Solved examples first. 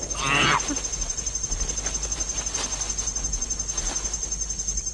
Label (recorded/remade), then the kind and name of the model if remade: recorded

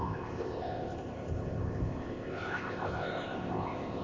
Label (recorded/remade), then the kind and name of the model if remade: remade, codec, ZipCodec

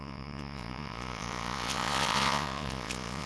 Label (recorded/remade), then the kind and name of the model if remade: remade, vocoder, Vocos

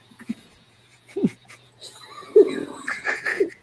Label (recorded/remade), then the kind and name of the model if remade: remade, vocoder, Vocos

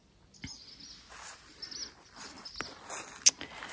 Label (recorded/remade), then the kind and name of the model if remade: recorded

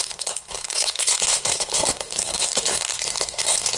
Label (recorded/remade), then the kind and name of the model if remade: remade, codec, SNAC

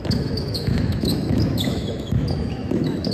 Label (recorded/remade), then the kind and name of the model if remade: remade, autoencoder, DAC-VAE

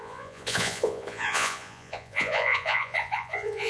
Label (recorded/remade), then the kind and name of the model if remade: remade, vocoder, Vocos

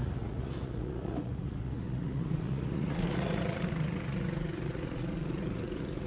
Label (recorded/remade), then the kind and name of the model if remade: remade, vocoder, Vocos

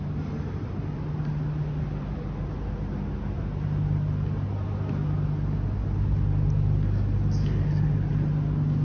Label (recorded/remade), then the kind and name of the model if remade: recorded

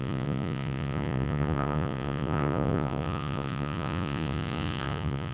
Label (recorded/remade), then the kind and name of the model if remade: remade, vocoder, Vocos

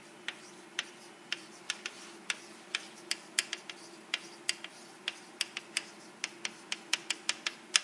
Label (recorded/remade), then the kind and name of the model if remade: recorded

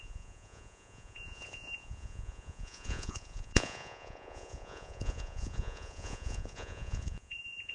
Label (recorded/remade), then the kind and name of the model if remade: remade, vocoder, Vocos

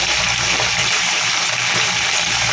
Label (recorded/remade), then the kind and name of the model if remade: remade, vocoder, BigVGAN v2